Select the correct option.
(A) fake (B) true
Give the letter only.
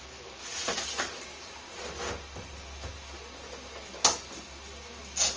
B